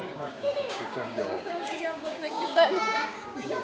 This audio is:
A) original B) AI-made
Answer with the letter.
B